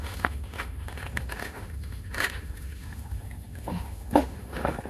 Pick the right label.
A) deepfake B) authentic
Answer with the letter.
A